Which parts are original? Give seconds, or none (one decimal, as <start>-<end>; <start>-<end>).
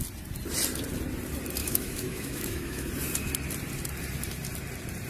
0.0-1.6; 2.9-5.1